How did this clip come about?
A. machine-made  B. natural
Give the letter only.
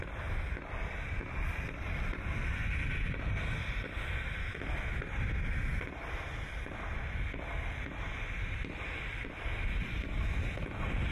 B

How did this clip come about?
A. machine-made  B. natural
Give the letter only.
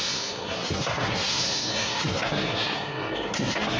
A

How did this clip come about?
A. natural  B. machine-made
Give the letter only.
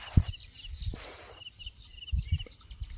A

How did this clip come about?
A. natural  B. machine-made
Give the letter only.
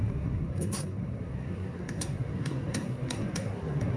B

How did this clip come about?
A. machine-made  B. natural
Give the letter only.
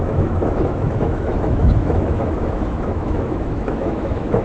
A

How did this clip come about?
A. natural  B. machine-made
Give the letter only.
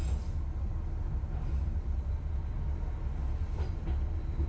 A